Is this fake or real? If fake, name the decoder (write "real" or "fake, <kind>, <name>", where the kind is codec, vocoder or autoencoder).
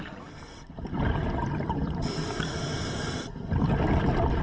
real